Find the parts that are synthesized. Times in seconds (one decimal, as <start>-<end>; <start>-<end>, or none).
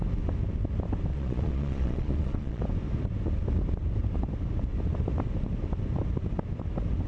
1.1-2.6